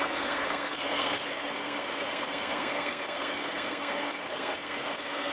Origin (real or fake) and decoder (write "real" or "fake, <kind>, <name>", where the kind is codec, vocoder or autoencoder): fake, codec, SNAC